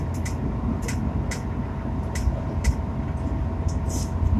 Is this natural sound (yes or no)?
yes